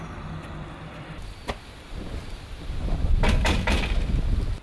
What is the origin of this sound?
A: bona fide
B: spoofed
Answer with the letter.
B